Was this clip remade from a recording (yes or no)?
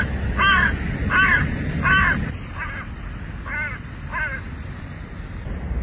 no